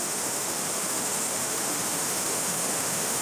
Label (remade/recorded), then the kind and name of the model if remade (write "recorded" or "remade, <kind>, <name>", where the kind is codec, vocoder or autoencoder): remade, autoencoder, DAC-VAE